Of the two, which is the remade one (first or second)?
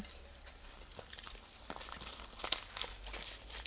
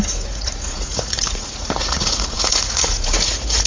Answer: second